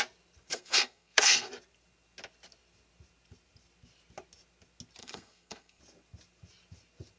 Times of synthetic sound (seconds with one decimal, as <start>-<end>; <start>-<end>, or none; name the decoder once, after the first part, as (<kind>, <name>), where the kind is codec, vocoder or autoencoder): 0.5-1.5 (codec, SNAC); 5.0-5.8